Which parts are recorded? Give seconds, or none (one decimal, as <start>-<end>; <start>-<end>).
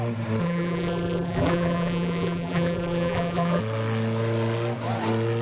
0.0-0.4; 3.6-5.4